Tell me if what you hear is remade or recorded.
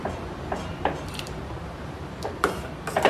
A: remade